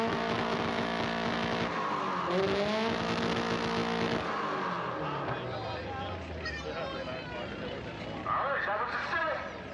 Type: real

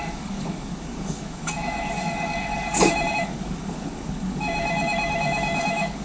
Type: fake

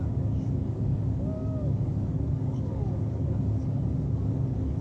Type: fake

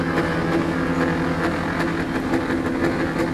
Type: real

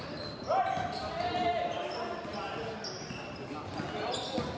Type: real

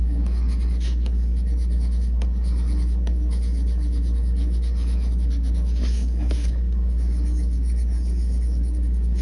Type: fake